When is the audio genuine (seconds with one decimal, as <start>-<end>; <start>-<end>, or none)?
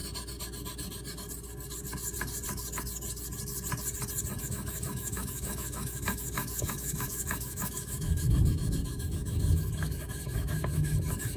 0.0-4.4